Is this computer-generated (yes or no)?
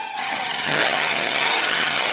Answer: yes